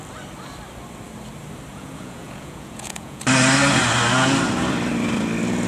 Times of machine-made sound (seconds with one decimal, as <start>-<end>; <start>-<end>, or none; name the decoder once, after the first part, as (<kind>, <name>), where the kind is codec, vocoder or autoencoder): 1.7-3.2 (vocoder, Vocos)